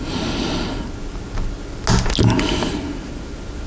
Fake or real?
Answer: real